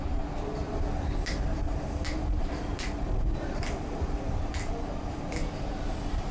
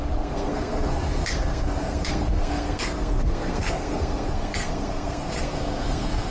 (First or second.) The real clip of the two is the first